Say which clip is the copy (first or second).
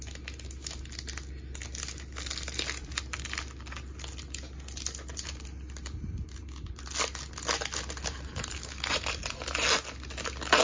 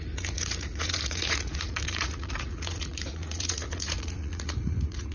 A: second